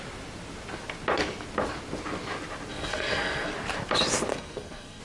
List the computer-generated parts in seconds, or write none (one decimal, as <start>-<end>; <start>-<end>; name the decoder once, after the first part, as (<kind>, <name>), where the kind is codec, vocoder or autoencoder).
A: 2.7-3.5 (codec, SNAC); 4.3-5.0